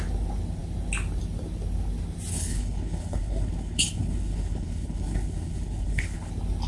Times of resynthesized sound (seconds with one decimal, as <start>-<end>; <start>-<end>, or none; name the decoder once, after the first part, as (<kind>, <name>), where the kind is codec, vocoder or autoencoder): 2.3-6.3 (codec, HILCodec)